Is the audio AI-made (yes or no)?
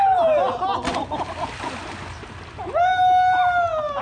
no